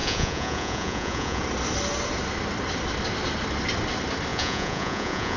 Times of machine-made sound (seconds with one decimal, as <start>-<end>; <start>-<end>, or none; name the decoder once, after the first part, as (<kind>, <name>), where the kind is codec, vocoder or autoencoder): 0.0-1.4 (vocoder, Vocos); 4.3-5.4